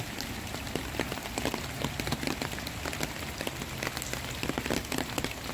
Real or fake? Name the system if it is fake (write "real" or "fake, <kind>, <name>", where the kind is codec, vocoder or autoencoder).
real